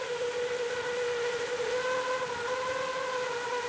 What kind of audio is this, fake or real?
real